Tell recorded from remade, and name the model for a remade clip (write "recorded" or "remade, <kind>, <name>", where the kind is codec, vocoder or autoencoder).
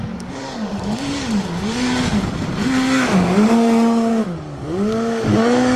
remade, codec, DAC